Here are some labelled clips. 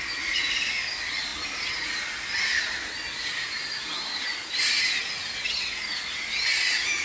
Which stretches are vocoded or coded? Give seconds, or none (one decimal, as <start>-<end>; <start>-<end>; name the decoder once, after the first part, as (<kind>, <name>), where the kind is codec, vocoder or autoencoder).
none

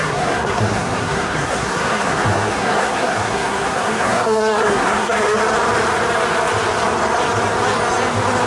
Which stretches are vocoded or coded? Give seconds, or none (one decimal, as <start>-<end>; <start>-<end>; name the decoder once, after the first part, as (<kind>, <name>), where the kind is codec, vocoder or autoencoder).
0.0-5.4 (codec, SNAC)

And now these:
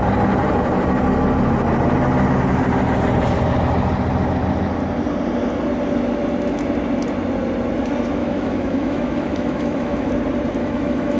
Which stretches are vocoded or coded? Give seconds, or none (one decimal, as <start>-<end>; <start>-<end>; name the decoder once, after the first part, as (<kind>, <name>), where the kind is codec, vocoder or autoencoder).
8.2-10.1 (autoencoder, DAC-VAE); 10.6-11.2